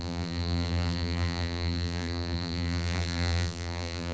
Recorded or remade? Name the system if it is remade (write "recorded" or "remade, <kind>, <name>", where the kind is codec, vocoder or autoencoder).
remade, vocoder, BigVGAN v2